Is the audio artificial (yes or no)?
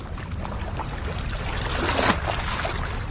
no